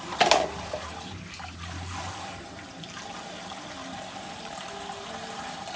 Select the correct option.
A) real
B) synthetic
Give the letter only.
A